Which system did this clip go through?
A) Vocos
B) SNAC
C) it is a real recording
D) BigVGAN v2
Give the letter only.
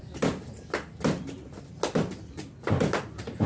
C